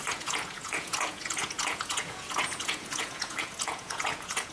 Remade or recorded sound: remade